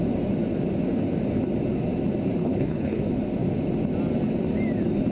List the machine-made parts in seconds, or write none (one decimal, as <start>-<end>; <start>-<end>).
2.4-3.0